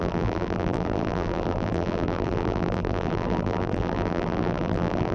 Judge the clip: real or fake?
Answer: fake